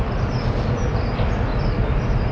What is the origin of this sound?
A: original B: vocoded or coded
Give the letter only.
A